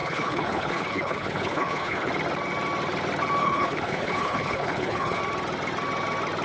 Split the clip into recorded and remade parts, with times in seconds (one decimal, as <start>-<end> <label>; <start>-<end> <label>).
0.0-2.1 remade; 2.1-3.4 recorded; 3.4-5.2 remade; 5.2-6.4 recorded